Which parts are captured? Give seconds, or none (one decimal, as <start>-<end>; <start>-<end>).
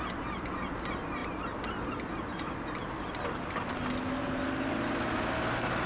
0.0-5.9